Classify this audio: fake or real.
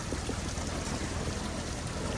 real